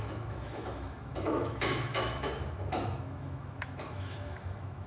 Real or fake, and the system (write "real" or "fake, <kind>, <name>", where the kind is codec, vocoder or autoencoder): fake, autoencoder, DAC-VAE